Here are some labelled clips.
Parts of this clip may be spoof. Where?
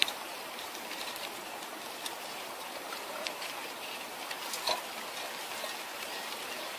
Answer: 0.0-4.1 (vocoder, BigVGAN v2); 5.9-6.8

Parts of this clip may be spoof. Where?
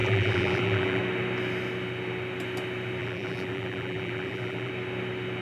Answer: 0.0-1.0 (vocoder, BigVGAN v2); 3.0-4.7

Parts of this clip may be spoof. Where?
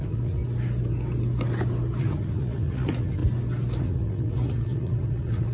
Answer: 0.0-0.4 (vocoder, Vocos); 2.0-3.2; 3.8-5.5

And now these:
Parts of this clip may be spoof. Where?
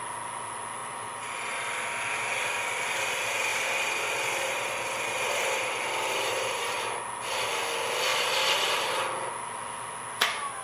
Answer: 0.8-1.5 (vocoder, BigVGAN v2); 3.5-6.8; 8.1-8.9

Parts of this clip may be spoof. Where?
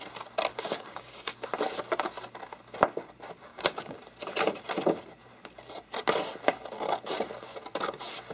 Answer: 0.5-1.3 (codec, DAC); 3.5-4.0